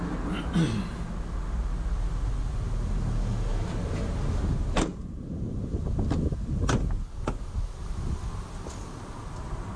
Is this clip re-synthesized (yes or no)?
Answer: no